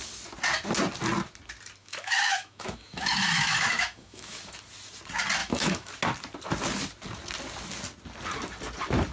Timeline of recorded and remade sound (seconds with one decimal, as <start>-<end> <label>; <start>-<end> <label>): 0.0-1.8 recorded; 1.8-4.4 remade; 4.4-5.4 recorded; 5.4-5.9 remade; 5.9-9.1 recorded